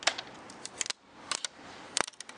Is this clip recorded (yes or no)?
yes